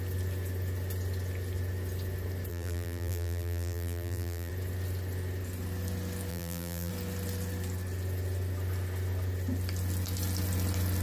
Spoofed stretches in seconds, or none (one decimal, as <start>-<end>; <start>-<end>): 2.5-4.5; 6.3-6.9